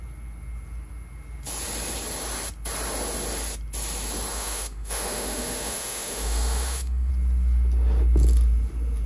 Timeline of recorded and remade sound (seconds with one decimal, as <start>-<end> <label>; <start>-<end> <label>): 0.0-4.3 recorded; 4.3-7.1 remade; 7.1-9.1 recorded